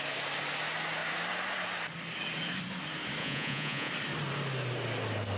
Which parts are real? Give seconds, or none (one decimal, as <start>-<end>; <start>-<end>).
0.0-3.2; 3.9-5.4